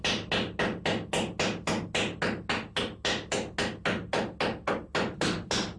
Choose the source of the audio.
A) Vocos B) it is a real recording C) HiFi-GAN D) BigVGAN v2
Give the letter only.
B